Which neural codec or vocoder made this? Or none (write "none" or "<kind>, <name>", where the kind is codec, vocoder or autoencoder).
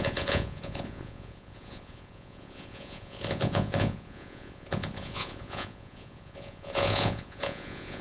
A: vocoder, Vocos